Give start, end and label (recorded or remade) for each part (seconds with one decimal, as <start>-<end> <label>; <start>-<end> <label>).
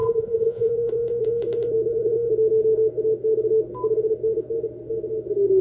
0.0-0.7 remade; 0.7-5.6 recorded